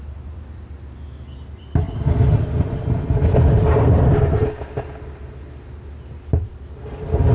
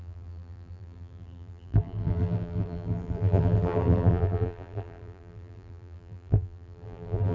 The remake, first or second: second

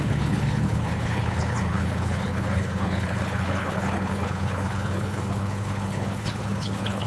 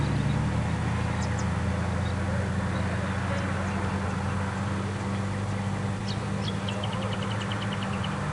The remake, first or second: first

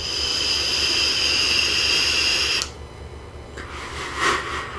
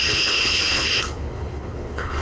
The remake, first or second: second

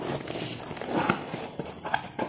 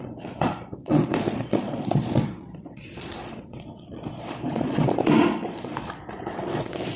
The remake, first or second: second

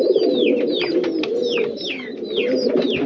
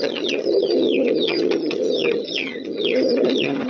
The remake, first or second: second